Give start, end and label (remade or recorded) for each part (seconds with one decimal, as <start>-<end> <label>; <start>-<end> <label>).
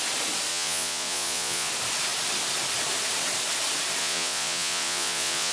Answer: 0.0-0.5 recorded; 0.5-1.7 remade; 1.7-4.0 recorded; 4.0-5.5 remade